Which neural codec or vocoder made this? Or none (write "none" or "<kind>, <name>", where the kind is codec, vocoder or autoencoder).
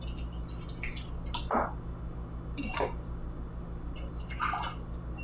none